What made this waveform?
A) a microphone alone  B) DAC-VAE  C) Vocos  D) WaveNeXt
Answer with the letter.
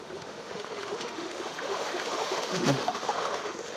B